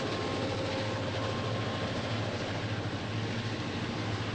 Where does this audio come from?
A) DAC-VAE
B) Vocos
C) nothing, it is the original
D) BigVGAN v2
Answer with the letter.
C